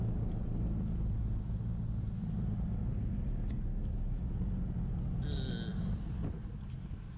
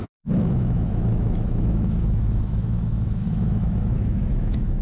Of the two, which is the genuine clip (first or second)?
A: first